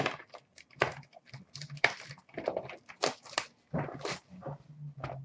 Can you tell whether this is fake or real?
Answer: real